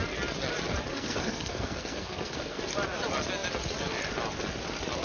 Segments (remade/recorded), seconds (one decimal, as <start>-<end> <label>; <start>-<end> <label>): 0.0-0.9 recorded; 0.9-2.6 remade; 2.6-5.0 recorded